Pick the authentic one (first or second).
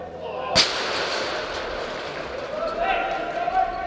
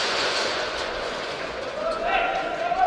first